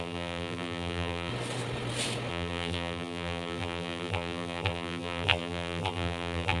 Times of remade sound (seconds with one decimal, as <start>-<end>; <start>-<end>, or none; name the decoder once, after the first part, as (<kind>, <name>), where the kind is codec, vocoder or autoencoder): 0.0-1.3 (vocoder, BigVGAN v2); 2.3-6.6